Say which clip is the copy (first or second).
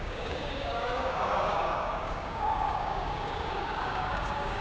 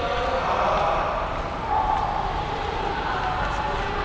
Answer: first